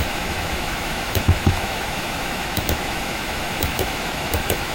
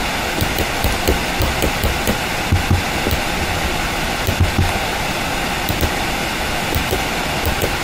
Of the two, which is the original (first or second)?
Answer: second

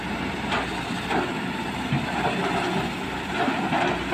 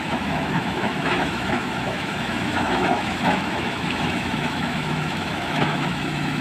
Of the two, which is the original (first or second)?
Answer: first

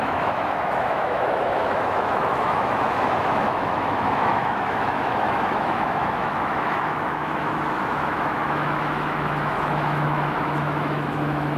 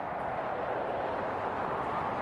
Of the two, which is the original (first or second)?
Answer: second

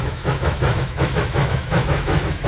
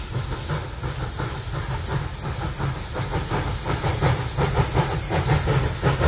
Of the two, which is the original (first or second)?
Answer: second